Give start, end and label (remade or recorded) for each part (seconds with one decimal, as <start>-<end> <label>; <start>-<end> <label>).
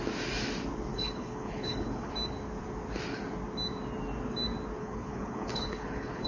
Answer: 0.0-0.9 recorded; 0.9-2.1 remade; 2.1-4.8 recorded; 4.8-6.3 remade